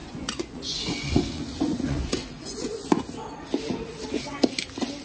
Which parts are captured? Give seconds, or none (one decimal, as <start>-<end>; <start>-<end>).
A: 3.0-5.0